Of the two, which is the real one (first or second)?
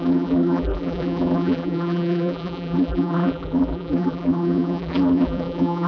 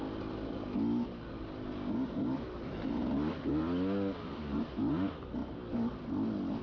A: second